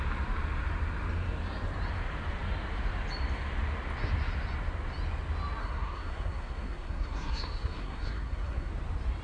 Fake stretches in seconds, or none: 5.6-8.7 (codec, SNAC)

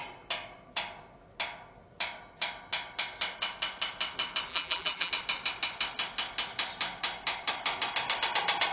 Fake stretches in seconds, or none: 4.5-5.1 (vocoder, BigVGAN v2)